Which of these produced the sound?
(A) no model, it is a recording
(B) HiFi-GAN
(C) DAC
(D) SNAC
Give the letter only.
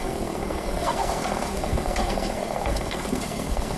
D